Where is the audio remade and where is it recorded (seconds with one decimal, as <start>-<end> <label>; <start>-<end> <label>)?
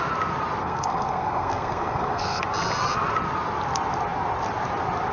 0.0-0.6 recorded; 0.6-2.4 remade; 2.4-5.1 recorded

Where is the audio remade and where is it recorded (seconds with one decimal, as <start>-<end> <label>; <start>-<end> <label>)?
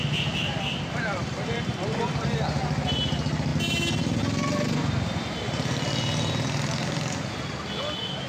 0.0-8.3 recorded